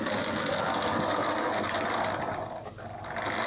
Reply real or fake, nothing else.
real